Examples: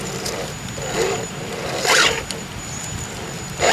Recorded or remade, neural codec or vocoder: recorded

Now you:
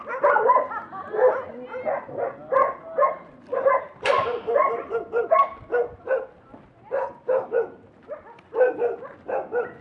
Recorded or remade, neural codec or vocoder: recorded